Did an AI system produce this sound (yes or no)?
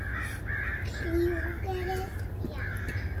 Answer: no